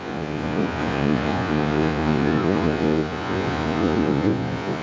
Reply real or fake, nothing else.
fake